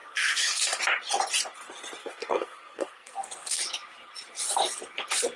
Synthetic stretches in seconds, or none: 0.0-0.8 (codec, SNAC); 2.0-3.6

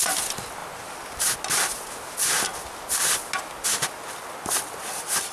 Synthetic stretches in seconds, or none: none

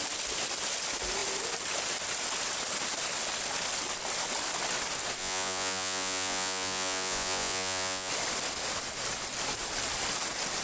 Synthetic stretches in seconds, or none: 5.2-8.1 (vocoder, Vocos)

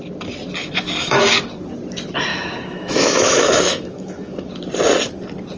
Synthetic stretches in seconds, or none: 0.6-1.2 (autoencoder, DAC-VAE); 2.3-4.5

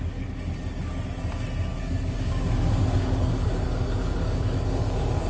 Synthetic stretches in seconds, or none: 1.7-5.3 (codec, DAC)